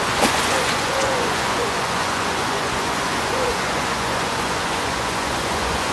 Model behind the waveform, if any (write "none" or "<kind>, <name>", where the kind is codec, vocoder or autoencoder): vocoder, Vocos